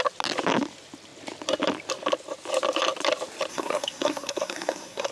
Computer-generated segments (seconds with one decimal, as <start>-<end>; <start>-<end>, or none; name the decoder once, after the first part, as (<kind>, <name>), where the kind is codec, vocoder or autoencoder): 3.5-5.1 (codec, SNAC)